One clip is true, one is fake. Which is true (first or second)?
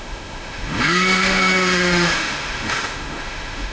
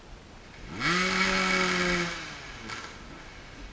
second